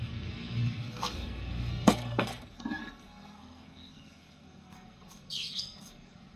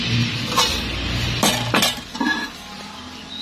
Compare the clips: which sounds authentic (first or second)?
second